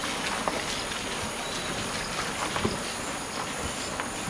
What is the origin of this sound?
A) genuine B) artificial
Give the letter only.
A